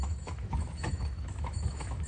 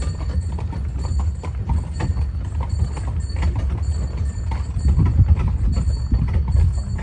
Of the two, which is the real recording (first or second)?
second